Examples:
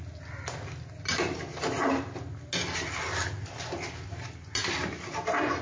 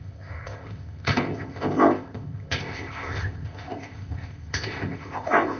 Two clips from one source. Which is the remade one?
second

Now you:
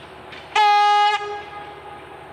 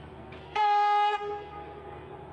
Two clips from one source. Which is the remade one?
second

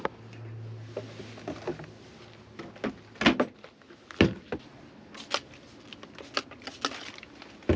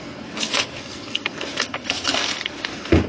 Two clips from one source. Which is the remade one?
second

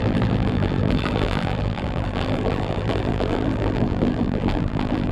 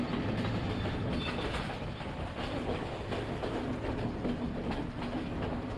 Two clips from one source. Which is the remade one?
first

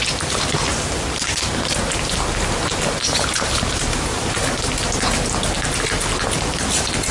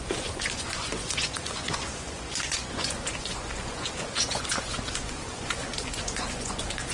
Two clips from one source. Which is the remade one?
second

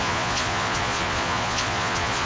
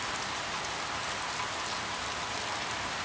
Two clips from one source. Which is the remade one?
first